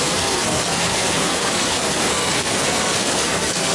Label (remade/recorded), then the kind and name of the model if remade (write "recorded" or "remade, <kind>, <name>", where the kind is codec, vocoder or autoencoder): remade, codec, SNAC